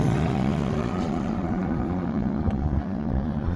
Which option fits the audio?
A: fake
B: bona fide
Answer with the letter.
A